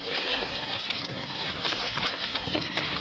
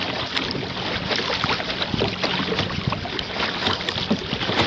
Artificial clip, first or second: first